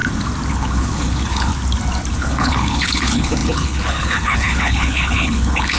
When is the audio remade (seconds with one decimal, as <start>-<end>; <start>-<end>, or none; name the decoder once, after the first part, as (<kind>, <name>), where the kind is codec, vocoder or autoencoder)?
0.5-1.5 (codec, HILCodec); 2.1-5.8